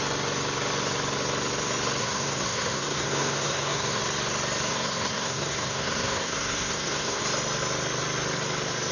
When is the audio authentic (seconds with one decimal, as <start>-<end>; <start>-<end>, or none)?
0.0-2.0; 4.0-4.7; 7.2-8.9